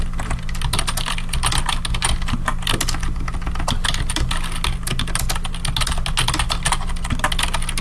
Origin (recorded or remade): recorded